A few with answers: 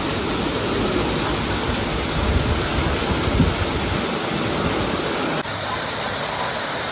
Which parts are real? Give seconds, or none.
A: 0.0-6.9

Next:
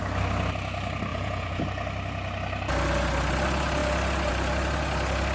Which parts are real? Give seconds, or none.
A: 0.0-1.1; 1.6-5.3

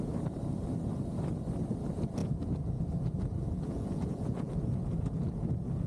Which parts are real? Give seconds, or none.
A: 0.0-2.2

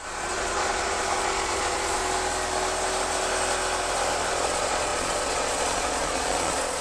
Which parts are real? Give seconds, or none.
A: 2.0-4.3

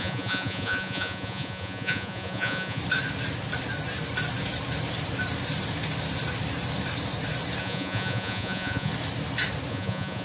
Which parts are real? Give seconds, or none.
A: 2.8-7.6; 8.9-9.7

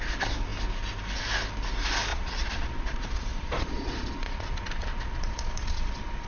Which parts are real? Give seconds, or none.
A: 0.0-2.1